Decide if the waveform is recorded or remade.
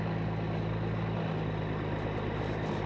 recorded